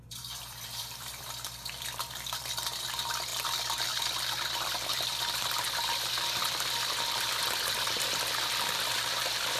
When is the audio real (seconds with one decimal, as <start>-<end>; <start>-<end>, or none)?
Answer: 3.3-4.0